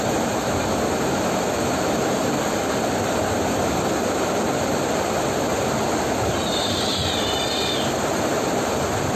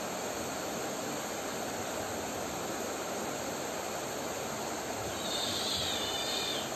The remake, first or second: first